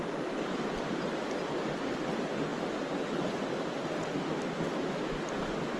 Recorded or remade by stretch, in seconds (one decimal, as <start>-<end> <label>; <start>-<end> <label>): 0.0-5.8 recorded